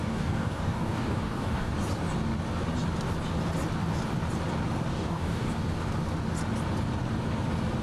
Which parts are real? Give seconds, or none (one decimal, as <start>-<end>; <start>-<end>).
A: 1.7-4.9; 5.5-7.8